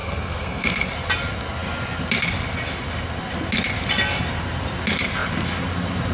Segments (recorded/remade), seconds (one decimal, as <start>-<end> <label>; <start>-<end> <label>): 0.0-0.9 remade; 0.9-6.1 recorded